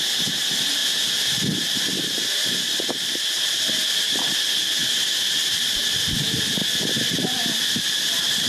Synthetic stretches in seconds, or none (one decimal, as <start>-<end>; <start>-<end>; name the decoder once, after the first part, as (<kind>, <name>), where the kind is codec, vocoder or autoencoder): none